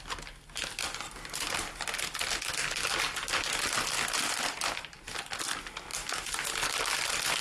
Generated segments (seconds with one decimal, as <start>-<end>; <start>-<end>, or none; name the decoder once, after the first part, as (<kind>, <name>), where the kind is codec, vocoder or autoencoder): none